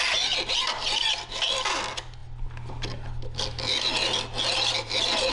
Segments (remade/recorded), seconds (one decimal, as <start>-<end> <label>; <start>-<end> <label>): 0.0-5.3 recorded